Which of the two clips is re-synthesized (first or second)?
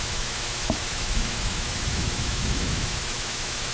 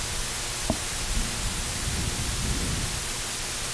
first